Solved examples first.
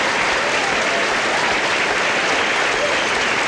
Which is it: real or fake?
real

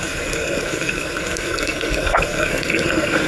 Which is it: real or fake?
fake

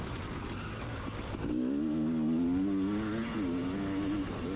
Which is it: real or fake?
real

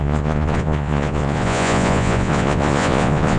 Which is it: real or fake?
fake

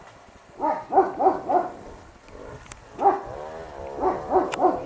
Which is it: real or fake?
real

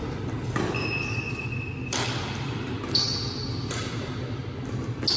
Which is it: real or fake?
real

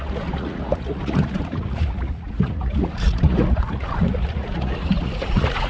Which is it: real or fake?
fake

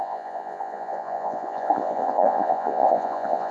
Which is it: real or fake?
fake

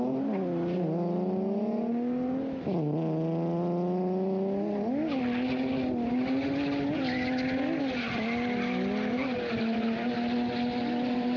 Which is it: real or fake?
real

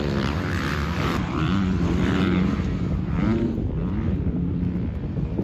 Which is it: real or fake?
fake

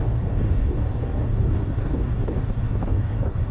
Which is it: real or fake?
fake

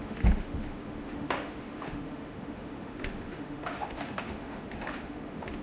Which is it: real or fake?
fake